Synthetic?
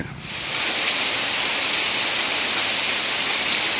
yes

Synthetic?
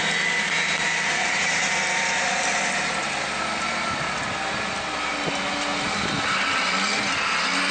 no